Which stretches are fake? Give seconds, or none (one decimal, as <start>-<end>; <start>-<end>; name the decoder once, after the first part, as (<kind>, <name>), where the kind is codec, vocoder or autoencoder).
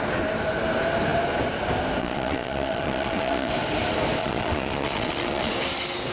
2.0-3.5 (vocoder, Vocos); 4.2-5.5